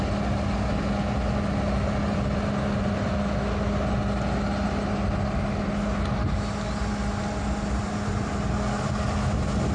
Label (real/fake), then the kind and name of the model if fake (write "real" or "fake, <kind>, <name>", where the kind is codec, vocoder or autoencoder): real